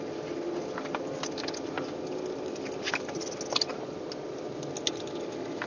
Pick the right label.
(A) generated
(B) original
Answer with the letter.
B